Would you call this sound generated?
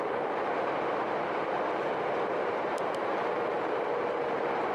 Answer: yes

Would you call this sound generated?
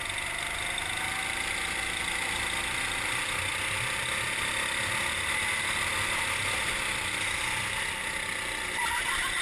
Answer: no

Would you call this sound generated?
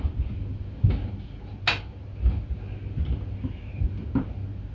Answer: no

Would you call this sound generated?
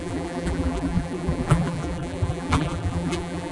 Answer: yes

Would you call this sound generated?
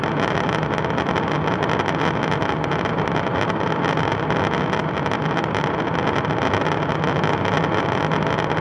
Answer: no